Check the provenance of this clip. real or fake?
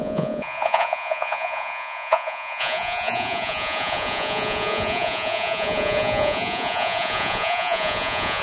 fake